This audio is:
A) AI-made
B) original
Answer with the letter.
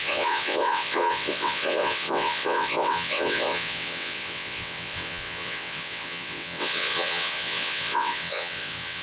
A